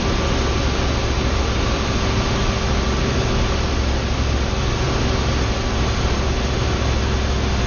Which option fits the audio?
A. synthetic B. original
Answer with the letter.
B